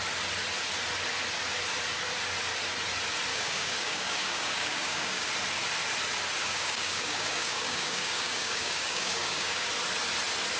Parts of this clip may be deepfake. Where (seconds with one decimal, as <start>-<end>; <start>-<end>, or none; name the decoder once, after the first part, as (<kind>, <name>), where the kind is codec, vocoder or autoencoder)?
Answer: 3.3-5.3 (codec, DAC); 6.4-9.7